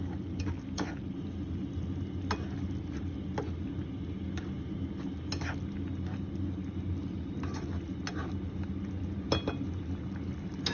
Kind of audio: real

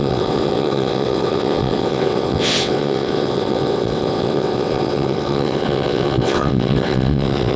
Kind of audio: fake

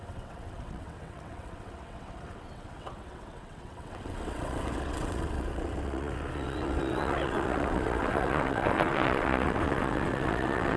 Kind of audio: fake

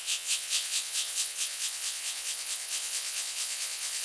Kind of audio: fake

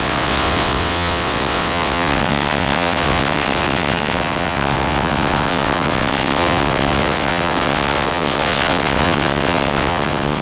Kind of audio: fake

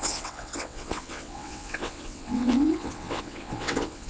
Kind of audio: fake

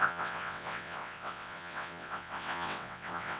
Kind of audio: fake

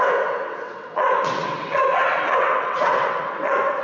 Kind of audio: fake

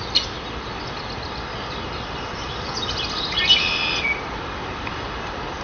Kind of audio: real